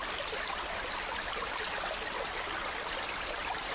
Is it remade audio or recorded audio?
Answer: recorded